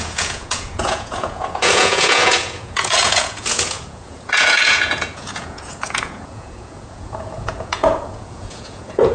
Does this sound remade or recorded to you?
remade